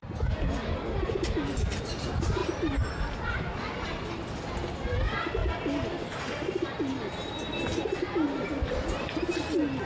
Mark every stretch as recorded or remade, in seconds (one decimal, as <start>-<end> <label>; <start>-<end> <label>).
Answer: 0.0-9.9 recorded